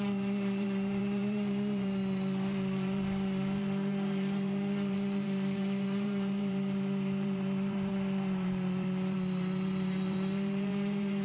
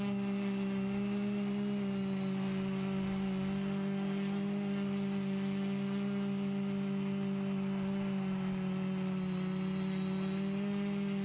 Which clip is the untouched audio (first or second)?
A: second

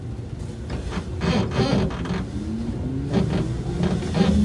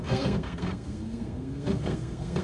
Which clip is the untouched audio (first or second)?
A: first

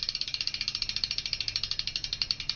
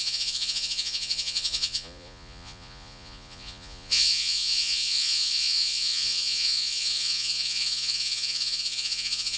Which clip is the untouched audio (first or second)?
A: first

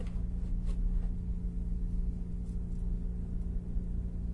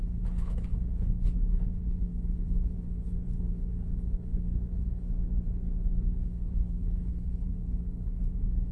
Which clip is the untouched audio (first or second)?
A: first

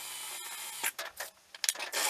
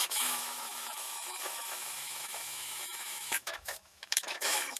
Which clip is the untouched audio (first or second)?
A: first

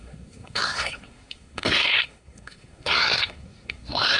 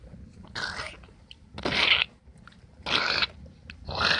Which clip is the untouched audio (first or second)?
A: second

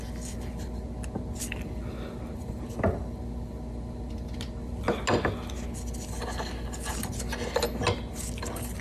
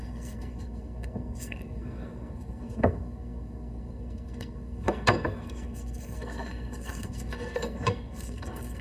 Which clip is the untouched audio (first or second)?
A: first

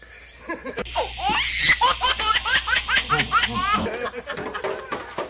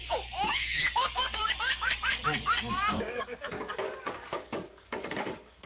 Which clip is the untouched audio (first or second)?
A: first